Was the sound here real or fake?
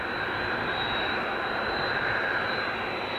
fake